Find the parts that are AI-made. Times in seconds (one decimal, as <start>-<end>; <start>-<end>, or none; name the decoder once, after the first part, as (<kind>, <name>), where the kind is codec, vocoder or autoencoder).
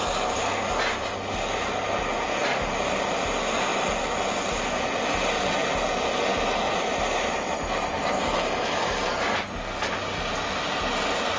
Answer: none